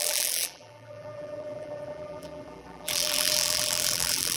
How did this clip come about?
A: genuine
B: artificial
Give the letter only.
B